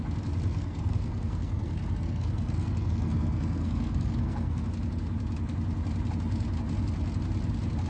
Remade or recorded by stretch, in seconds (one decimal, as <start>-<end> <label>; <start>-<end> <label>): 0.0-0.5 recorded; 0.5-4.7 remade; 4.7-7.9 recorded

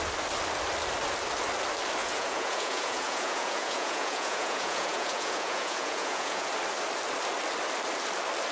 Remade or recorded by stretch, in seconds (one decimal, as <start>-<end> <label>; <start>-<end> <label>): 0.0-2.0 recorded; 2.0-6.5 remade; 6.5-8.5 recorded

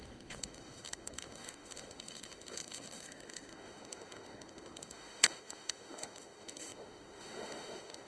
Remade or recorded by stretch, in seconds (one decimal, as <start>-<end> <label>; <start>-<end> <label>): 0.0-8.1 remade

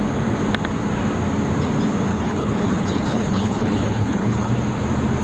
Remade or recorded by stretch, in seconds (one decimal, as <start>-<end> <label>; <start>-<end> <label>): 0.0-2.1 recorded; 2.1-4.5 remade; 4.5-5.2 recorded

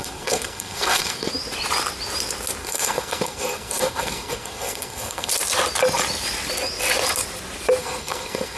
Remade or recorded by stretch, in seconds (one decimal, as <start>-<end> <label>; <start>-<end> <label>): 0.0-1.3 remade; 1.3-2.6 recorded; 2.6-5.3 remade; 5.3-7.8 recorded; 7.8-8.6 remade